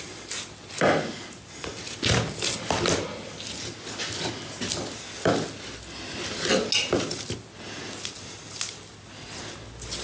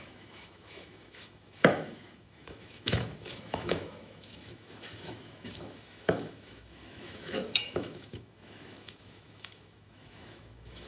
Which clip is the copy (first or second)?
second